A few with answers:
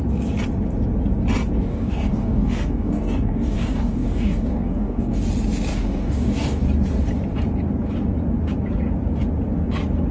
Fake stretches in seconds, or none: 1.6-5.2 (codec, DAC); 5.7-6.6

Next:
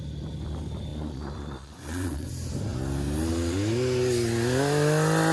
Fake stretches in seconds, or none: 0.9-2.3 (vocoder, Vocos)

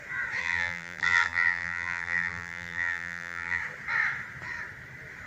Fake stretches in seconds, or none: 0.4-3.6 (vocoder, BigVGAN v2)

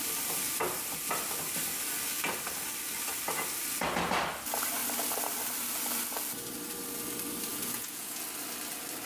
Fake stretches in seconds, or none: 7.5-8.2 (vocoder, Vocos)

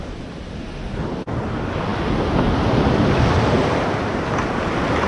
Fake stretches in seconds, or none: none

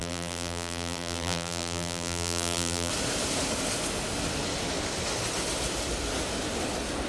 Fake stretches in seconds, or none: 0.0-2.9 (vocoder, BigVGAN v2)

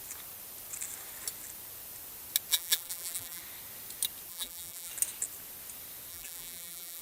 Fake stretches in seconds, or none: 2.5-3.4 (vocoder, BigVGAN v2); 4.3-4.9; 6.1-7.0